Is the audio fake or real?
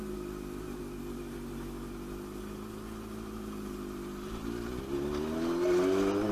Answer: real